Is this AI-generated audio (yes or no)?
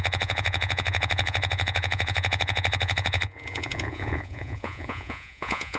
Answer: yes